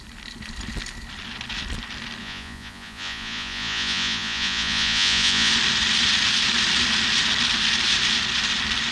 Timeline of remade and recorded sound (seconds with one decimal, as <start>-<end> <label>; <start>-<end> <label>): 0.0-2.2 recorded; 2.2-5.5 remade; 5.5-8.9 recorded